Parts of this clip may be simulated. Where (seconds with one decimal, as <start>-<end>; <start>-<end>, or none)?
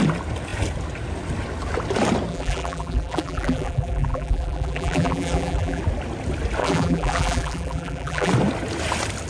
2.3-5.8; 6.6-8.3